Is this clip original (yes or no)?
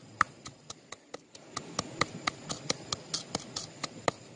yes